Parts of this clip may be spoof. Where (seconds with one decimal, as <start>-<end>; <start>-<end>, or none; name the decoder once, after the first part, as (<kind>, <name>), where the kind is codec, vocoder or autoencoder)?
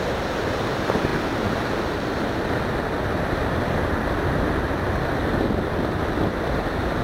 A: none